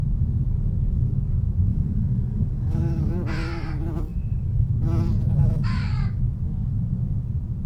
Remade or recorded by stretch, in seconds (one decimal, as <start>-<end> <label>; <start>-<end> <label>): 0.0-1.7 recorded; 1.7-3.1 remade; 3.1-4.1 recorded; 4.1-4.7 remade; 4.7-5.7 recorded; 5.7-6.2 remade; 6.2-7.7 recorded

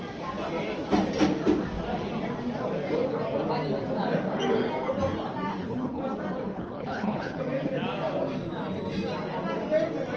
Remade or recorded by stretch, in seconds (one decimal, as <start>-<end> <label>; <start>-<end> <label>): 0.0-5.5 recorded; 5.5-6.0 remade; 6.0-6.5 recorded; 6.5-7.4 remade; 7.4-10.2 recorded

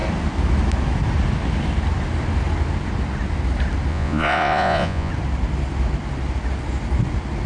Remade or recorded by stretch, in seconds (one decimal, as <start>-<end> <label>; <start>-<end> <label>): 0.0-3.9 recorded; 3.9-5.1 remade; 5.1-7.5 recorded